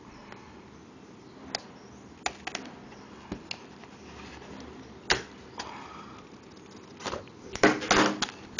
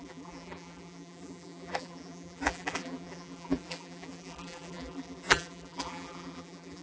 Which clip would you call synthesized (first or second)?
second